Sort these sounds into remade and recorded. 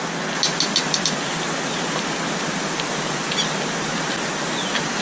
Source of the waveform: recorded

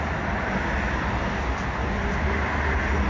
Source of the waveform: recorded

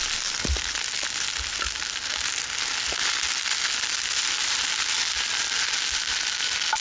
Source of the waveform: recorded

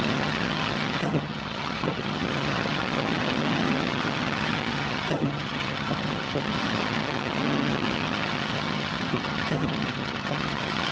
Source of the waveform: remade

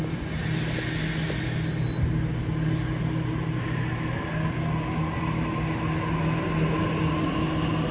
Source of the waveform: recorded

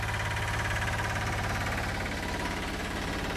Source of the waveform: recorded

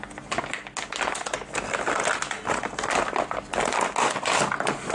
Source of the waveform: recorded